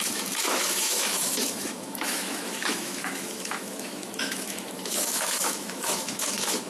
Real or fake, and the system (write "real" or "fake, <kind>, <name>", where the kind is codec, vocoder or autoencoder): fake, autoencoder, DAC-VAE